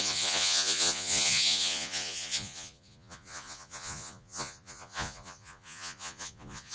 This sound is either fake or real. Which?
fake